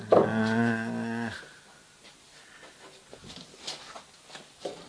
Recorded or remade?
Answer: recorded